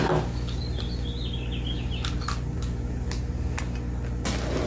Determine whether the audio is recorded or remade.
recorded